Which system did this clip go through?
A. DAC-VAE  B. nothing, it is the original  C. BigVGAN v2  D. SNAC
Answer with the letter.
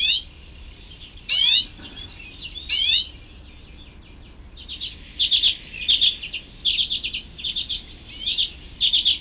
B